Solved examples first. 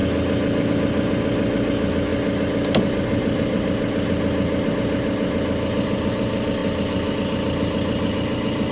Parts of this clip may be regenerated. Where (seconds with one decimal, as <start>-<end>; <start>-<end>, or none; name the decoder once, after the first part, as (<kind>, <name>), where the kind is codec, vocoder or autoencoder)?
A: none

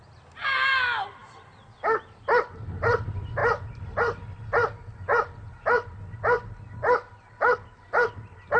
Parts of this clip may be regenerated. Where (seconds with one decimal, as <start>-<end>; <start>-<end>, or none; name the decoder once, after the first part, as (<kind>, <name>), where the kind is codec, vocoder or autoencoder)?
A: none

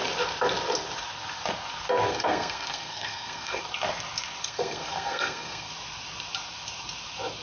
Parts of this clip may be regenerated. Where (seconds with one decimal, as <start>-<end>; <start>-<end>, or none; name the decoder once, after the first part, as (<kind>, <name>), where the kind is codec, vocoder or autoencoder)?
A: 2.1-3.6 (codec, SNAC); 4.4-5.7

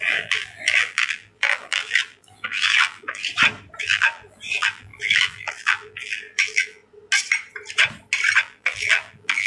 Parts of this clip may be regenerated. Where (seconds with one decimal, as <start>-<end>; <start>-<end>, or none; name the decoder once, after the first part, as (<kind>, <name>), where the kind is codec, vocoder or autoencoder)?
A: 0.0-3.2 (vocoder, BigVGAN v2); 3.8-6.8; 8.4-9.5